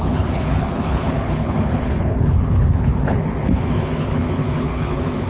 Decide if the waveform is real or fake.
fake